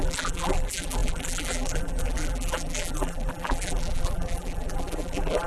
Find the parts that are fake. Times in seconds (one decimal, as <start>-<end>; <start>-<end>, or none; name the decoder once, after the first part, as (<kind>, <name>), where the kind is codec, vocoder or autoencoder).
0.0-5.5 (vocoder, BigVGAN v2)